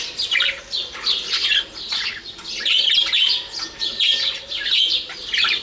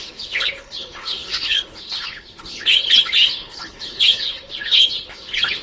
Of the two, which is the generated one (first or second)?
second